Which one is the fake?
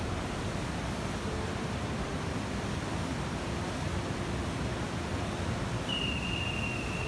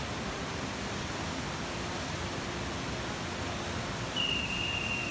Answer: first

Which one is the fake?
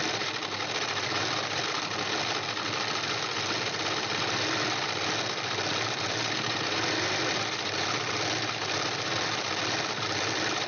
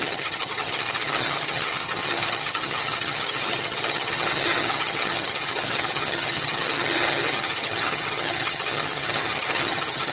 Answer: second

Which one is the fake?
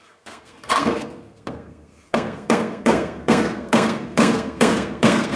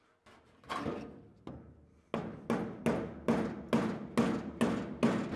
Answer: first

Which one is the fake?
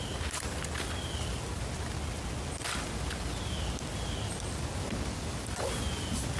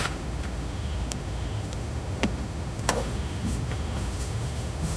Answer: second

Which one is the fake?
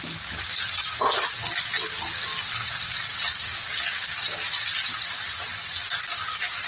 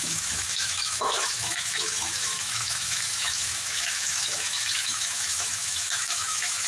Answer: second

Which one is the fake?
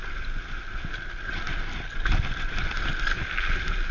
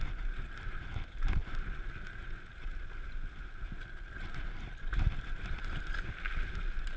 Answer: second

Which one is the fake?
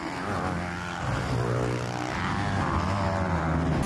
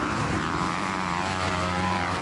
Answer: second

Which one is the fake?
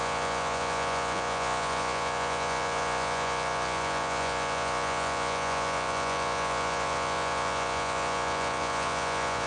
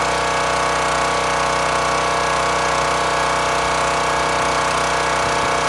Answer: first